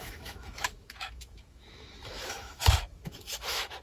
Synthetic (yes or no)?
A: yes